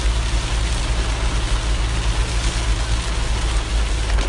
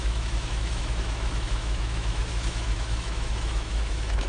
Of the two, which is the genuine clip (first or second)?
first